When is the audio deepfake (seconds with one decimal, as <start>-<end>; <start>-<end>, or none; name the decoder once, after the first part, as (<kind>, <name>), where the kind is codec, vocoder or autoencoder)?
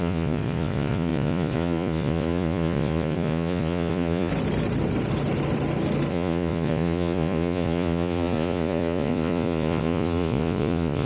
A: 0.0-4.3 (vocoder, Vocos); 6.1-11.1